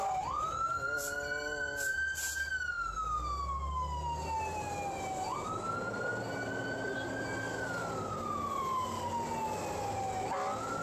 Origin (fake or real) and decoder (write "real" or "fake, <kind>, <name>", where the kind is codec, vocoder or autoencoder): real